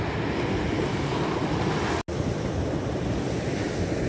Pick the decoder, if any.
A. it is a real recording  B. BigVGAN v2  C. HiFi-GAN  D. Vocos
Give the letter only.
A